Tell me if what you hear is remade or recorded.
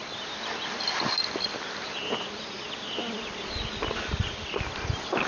recorded